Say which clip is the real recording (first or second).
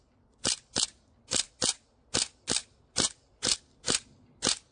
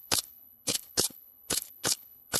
first